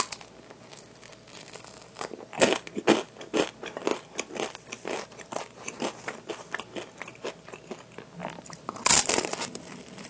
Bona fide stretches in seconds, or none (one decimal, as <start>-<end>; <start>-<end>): 0.0-3.9; 6.3-8.2